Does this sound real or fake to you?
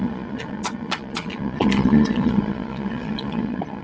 fake